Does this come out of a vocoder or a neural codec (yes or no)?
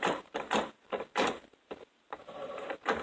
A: yes